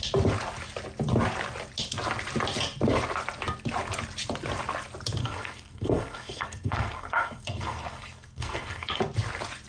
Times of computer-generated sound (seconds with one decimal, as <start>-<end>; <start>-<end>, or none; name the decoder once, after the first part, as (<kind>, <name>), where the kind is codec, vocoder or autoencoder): 5.2-9.0 (codec, SNAC)